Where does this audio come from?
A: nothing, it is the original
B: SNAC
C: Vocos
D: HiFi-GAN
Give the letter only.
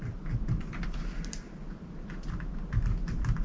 A